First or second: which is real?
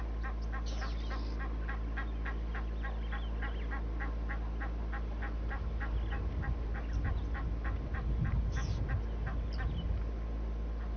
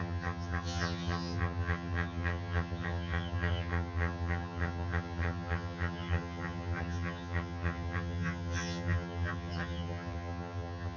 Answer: first